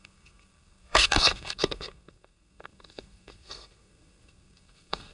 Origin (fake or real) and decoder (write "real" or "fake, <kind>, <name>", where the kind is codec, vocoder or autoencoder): fake, codec, SNAC